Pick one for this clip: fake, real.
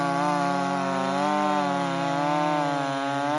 real